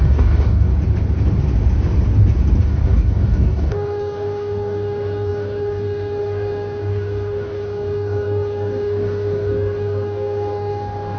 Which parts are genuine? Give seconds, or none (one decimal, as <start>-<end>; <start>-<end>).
0.7-2.6

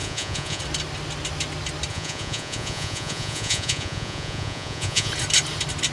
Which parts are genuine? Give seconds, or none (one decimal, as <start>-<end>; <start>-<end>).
0.6-1.9; 5.1-5.9

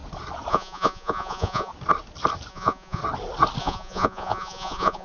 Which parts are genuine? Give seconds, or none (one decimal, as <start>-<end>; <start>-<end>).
0.0-0.5; 1.7-2.5; 3.0-3.6

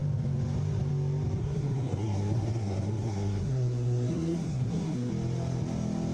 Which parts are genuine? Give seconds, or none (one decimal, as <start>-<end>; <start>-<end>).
0.0-1.4; 5.1-6.1

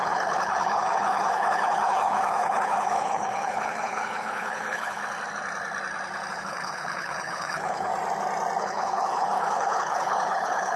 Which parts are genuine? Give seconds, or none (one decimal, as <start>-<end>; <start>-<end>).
5.0-6.3; 7.9-8.6

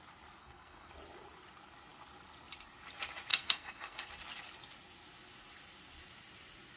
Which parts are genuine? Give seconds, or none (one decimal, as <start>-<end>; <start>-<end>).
0.0-0.4; 0.9-3.3; 4.1-6.8

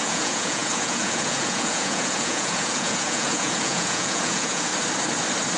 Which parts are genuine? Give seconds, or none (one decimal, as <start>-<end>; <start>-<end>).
4.7-5.6